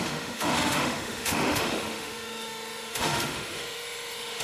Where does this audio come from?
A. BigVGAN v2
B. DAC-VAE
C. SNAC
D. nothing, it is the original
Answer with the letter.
B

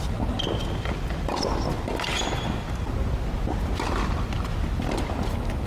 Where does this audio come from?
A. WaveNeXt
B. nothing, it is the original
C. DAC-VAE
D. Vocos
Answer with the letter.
B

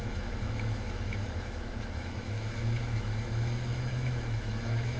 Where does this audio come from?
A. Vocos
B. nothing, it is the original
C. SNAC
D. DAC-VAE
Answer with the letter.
D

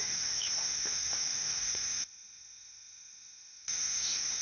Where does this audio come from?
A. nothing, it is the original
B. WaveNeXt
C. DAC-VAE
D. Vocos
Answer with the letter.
C